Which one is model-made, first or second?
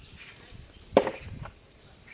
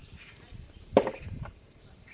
second